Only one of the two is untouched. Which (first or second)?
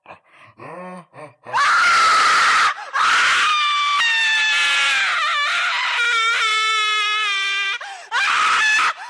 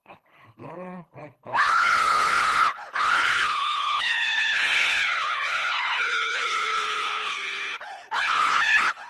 first